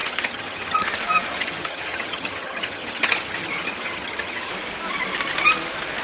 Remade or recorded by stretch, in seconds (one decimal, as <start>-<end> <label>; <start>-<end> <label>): 0.0-0.9 remade; 0.9-1.3 recorded; 1.3-4.5 remade; 4.5-6.0 recorded